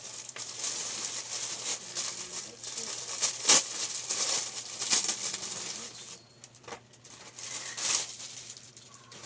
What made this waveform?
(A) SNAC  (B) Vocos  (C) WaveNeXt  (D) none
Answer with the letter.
D